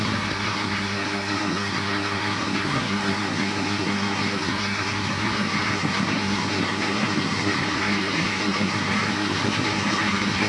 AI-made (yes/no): yes